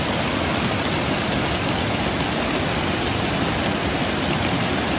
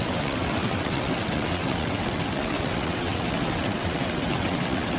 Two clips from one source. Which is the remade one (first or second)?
second